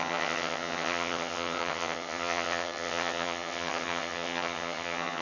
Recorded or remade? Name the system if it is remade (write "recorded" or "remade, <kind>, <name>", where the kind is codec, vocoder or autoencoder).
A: remade, vocoder, HiFi-GAN